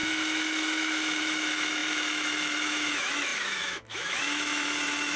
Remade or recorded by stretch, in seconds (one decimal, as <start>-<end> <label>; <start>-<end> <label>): 0.0-5.2 remade